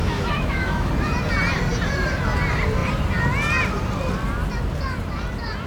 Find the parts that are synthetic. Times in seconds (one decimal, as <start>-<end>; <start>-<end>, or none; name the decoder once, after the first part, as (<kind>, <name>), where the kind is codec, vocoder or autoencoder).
0.0-0.9 (autoencoder, DAC-VAE)